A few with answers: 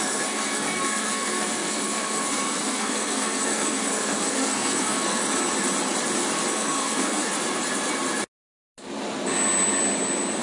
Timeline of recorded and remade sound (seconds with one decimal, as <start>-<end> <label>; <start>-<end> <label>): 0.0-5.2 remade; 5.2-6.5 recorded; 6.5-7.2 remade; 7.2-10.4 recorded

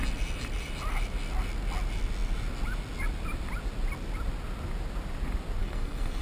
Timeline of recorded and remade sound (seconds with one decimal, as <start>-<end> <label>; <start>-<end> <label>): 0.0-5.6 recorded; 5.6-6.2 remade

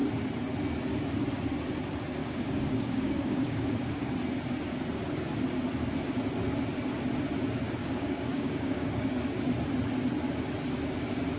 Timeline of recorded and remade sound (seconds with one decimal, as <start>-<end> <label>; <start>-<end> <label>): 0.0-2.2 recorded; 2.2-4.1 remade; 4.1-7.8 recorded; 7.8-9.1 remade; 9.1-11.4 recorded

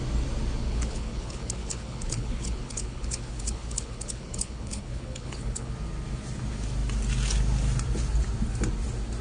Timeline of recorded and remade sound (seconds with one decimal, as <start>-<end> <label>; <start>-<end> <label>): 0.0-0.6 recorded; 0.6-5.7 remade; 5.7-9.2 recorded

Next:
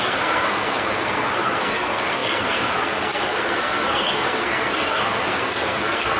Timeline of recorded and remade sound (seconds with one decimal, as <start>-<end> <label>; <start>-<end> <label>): 0.0-6.2 remade